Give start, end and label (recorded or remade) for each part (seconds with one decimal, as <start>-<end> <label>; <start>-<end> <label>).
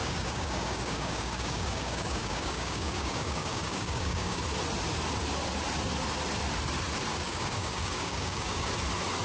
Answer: 0.0-4.4 remade; 4.4-7.1 recorded; 7.1-8.7 remade; 8.7-9.2 recorded